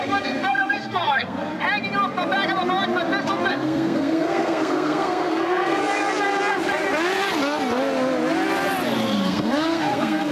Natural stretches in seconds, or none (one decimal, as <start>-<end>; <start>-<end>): 1.5-3.5; 5.8-9.2